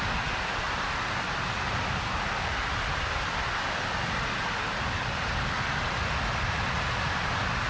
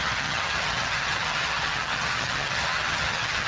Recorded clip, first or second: first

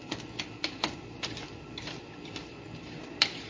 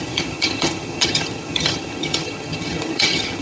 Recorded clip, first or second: first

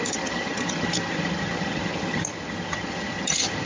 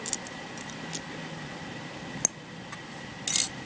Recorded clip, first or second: second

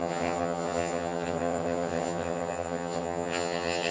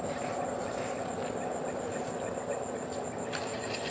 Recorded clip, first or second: second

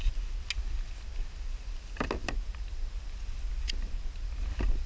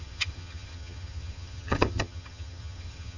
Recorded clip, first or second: first